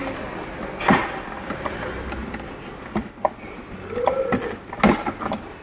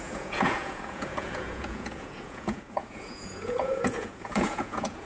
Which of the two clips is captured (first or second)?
first